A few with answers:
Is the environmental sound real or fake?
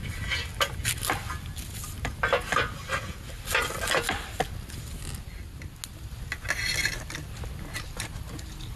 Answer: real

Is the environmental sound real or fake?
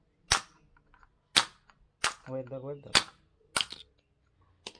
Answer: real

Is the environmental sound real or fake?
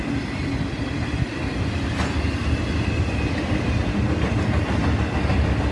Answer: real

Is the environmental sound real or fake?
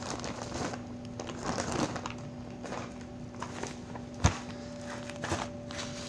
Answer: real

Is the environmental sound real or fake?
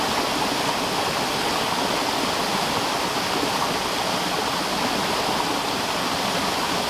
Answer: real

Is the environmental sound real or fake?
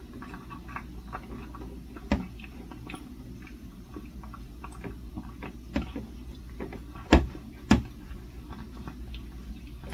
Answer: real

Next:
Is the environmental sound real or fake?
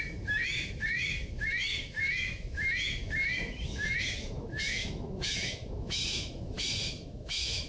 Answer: fake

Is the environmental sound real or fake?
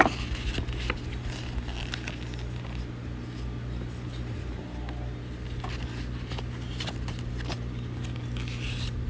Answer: real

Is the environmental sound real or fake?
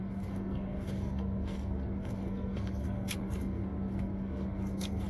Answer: fake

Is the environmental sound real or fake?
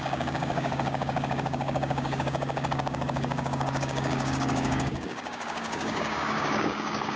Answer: fake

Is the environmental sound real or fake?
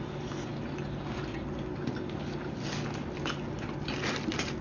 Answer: real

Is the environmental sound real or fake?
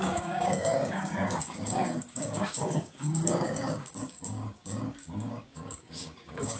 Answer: fake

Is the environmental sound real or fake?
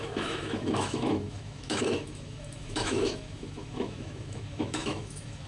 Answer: fake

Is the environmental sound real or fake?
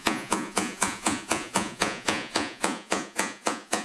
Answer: fake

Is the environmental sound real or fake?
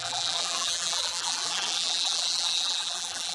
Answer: fake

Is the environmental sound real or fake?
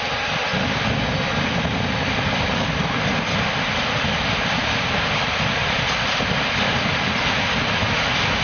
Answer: real